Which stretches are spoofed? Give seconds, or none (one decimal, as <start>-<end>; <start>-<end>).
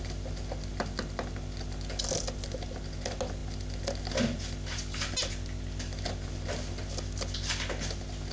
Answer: none